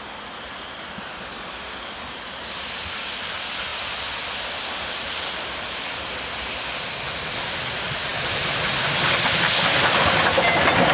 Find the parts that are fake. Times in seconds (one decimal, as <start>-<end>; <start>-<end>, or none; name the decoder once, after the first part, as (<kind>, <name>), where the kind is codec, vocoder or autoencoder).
none